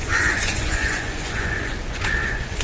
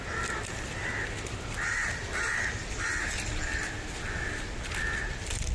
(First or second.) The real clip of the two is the second